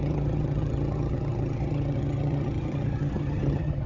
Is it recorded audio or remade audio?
remade